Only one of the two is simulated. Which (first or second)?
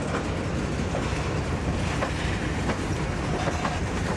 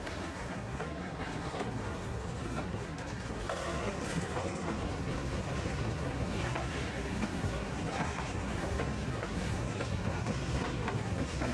second